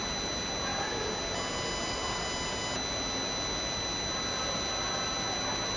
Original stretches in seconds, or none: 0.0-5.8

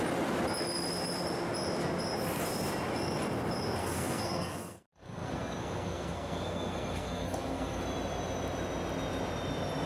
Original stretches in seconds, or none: 0.0-3.8; 7.8-9.9